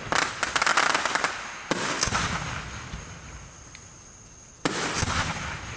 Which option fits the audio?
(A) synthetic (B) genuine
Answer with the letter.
B